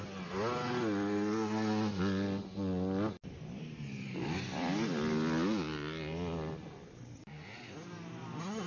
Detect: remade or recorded recorded